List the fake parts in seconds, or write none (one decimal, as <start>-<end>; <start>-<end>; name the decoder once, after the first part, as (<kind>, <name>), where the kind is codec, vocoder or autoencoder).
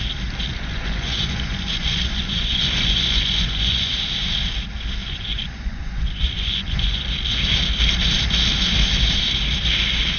0.5-3.9 (vocoder, Vocos); 5.0-7.0